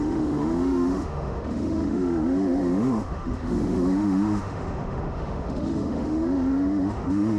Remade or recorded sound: remade